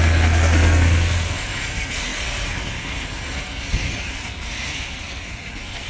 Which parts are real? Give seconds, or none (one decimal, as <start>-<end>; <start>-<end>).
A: none